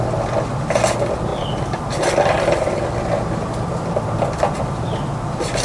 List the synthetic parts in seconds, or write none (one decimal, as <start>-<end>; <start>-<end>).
none